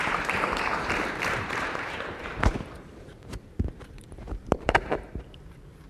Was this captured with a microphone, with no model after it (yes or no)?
no